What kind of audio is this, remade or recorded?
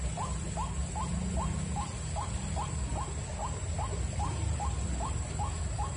recorded